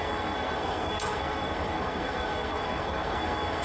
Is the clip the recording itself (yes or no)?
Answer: no